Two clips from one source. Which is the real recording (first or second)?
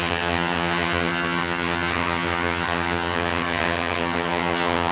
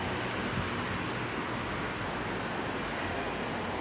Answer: second